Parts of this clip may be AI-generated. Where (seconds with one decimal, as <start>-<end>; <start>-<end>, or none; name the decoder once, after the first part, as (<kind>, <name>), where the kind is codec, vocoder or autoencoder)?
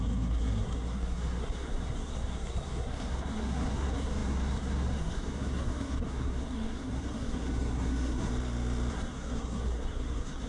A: 0.0-8.3 (codec, SNAC); 8.9-10.5